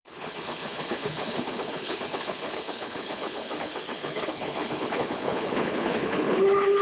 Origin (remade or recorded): remade